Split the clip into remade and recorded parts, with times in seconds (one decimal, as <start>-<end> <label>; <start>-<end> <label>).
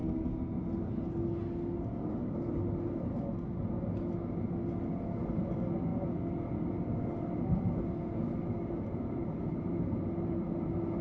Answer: 0.0-11.0 recorded